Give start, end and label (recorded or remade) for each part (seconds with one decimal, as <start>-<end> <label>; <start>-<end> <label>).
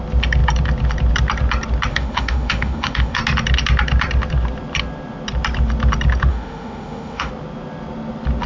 0.0-1.9 recorded; 1.9-3.2 remade; 3.2-6.3 recorded; 6.3-7.3 remade; 7.3-8.5 recorded